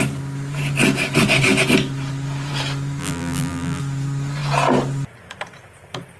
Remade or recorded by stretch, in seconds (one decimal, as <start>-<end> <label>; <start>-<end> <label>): 0.0-3.0 recorded; 3.0-3.8 remade; 3.8-6.2 recorded